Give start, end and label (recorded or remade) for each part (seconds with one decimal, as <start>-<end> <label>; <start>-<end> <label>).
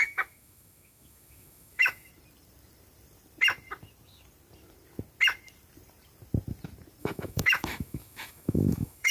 0.0-2.1 remade; 2.1-7.0 recorded; 7.0-9.1 remade